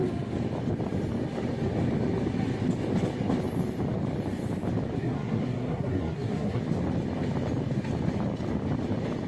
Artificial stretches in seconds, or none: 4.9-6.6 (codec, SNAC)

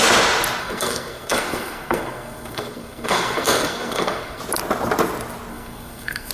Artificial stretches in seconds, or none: 0.6-4.4 (codec, SNAC); 5.5-6.3

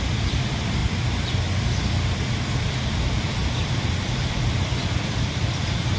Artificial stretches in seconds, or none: 0.0-6.0 (vocoder, BigVGAN v2)

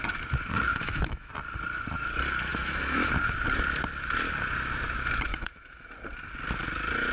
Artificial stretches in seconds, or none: 0.7-1.3 (autoencoder, DAC-VAE); 2.5-3.1; 5.3-5.9

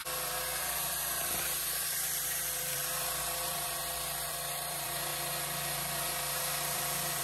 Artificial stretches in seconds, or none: 0.0-3.8 (vocoder, BigVGAN v2); 4.3-5.1; 6.4-7.2

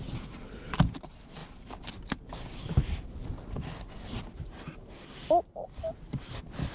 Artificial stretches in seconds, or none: none

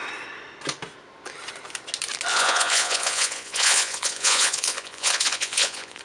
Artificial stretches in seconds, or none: 2.3-6.0 (vocoder, Vocos)